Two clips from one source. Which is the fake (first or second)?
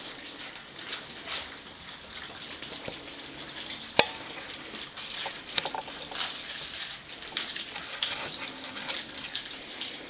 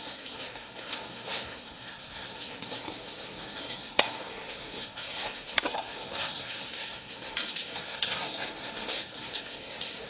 second